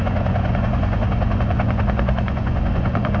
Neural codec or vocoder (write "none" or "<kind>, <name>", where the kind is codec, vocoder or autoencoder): vocoder, Vocos